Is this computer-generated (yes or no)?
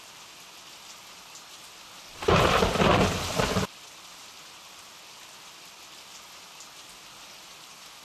no